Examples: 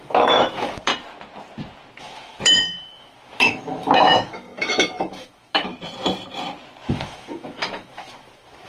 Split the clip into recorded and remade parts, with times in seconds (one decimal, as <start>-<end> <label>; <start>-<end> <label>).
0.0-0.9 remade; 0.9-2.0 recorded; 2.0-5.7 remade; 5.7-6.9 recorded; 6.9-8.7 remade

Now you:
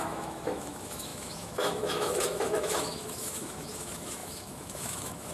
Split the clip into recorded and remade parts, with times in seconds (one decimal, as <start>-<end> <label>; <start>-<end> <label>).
0.0-5.3 remade

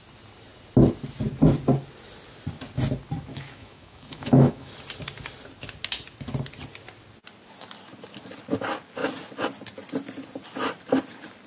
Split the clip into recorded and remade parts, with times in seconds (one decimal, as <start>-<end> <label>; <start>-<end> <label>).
0.0-3.3 recorded; 3.3-4.7 remade; 4.7-11.5 recorded

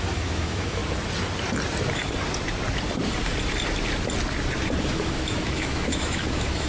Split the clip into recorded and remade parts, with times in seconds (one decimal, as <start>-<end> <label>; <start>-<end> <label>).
0.0-0.8 remade; 0.8-4.8 recorded; 4.8-6.7 remade

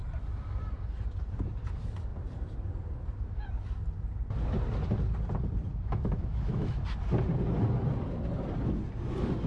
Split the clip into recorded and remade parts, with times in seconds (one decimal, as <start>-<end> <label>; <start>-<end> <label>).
0.0-5.7 recorded; 5.7-6.8 remade; 6.8-9.5 recorded